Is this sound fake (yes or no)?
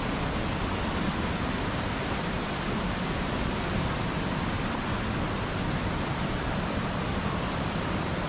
no